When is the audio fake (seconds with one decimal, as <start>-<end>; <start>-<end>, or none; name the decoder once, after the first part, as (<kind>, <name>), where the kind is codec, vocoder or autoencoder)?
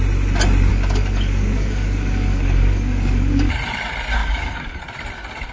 0.7-3.5 (codec, DAC); 4.2-4.8